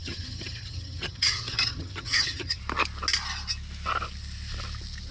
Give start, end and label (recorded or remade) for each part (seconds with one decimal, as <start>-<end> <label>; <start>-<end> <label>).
0.0-2.6 remade; 2.6-5.1 recorded